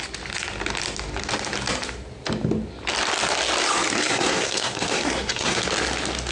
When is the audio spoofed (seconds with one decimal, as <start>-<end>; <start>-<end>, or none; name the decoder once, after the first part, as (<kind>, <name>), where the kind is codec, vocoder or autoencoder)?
4.0-5.6 (codec, SNAC)